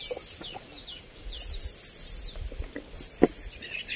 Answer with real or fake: real